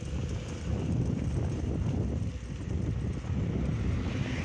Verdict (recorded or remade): recorded